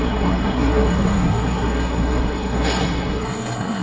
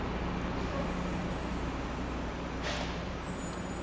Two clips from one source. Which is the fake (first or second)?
first